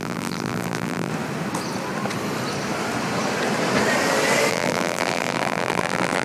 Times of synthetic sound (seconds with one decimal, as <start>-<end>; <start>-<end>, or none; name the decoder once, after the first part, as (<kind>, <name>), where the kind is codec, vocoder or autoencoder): 0.0-1.1 (vocoder, BigVGAN v2); 4.5-6.2